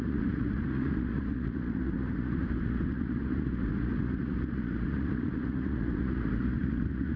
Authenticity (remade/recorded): remade